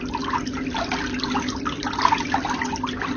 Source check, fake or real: real